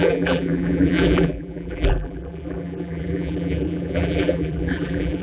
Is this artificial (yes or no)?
yes